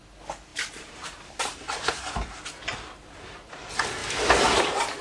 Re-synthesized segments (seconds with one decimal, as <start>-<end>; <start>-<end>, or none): 0.5-3.5